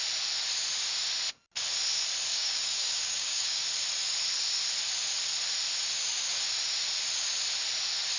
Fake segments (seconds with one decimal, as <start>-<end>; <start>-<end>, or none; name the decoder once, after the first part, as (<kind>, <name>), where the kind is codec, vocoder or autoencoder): 2.3-3.6 (codec, DAC)